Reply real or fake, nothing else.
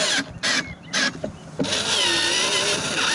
fake